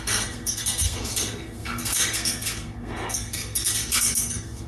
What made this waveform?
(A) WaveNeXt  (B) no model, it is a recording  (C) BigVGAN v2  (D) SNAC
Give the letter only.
D